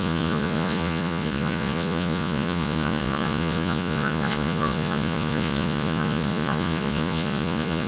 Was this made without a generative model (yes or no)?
no